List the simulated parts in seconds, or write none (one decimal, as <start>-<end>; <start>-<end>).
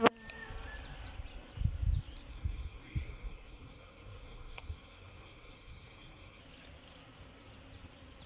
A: 2.3-6.4